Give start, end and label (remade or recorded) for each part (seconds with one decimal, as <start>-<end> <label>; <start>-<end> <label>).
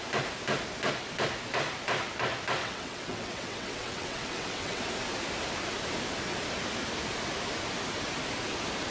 0.0-2.6 recorded; 2.6-4.8 remade; 4.8-8.9 recorded